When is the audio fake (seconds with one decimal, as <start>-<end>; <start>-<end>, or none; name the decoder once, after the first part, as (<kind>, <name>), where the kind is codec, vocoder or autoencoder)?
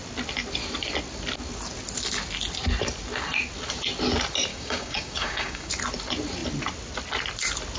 4.5-5.7 (codec, DAC)